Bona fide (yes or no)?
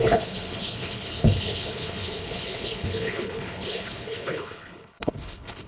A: no